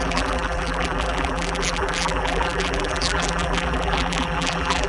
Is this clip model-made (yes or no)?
yes